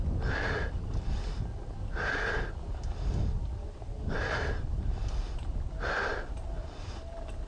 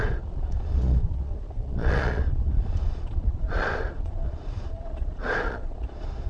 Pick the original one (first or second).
first